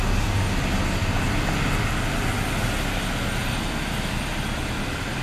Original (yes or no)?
yes